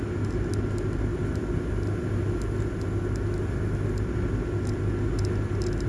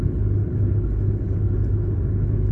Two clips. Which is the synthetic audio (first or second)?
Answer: second